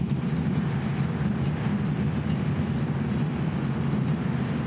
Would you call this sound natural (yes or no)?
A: yes